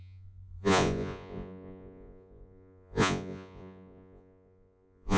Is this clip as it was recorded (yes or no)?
no